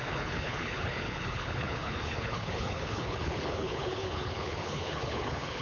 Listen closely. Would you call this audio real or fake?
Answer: fake